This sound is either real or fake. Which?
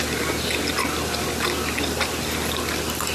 real